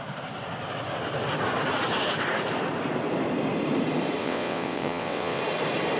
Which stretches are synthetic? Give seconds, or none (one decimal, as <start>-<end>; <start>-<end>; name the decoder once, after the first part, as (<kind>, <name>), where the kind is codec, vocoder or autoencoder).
4.2-5.4 (vocoder, WaveNeXt)